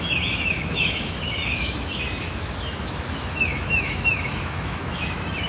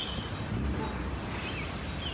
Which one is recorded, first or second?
second